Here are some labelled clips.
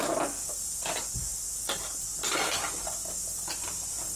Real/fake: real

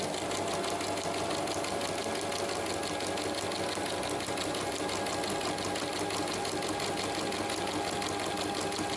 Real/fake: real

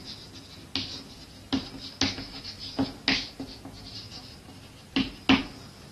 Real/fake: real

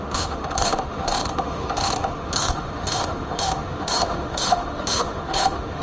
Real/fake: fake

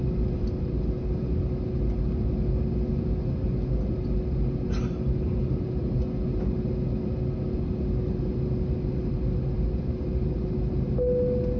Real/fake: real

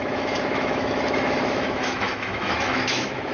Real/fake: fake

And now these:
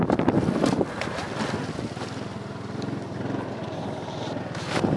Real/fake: real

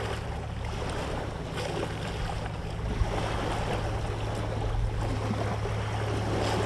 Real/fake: real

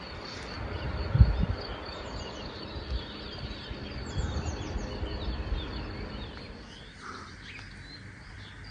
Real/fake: real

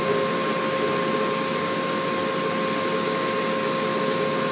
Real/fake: real